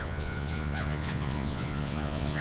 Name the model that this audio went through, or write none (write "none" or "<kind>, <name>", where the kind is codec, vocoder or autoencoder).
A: vocoder, Vocos